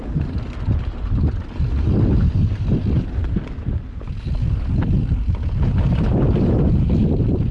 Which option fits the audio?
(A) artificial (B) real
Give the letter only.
B